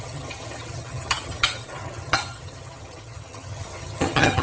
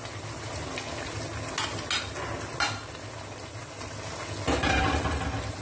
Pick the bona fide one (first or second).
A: second